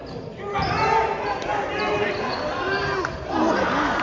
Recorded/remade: recorded